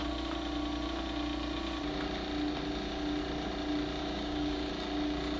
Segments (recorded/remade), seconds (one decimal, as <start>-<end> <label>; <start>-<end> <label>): 0.0-4.0 recorded; 4.0-4.7 remade; 4.7-5.4 recorded